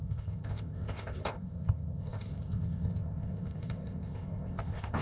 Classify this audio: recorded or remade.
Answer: remade